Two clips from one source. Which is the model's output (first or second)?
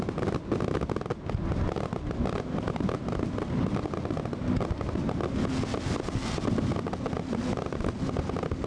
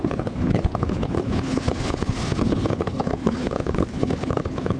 second